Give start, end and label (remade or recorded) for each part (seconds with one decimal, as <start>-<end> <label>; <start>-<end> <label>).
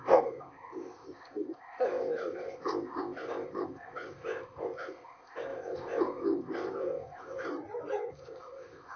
0.0-7.5 remade; 7.5-8.1 recorded; 8.1-9.0 remade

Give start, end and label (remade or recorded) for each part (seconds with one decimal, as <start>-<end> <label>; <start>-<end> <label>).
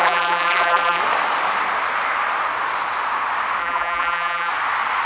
0.0-1.0 remade; 1.0-3.6 recorded; 3.6-4.5 remade; 4.5-5.1 recorded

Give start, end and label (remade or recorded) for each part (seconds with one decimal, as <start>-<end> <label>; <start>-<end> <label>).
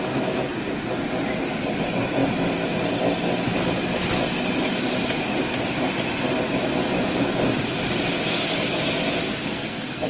0.0-9.4 recorded; 9.4-10.1 remade